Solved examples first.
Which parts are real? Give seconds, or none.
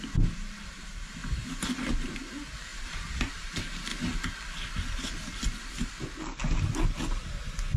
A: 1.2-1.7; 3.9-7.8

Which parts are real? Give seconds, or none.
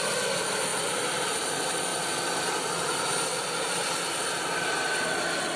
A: 0.0-5.6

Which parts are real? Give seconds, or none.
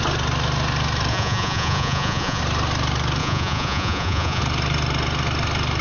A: 0.0-1.1; 2.4-3.2; 4.4-5.8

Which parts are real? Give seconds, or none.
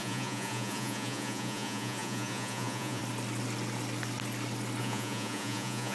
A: 3.0-4.8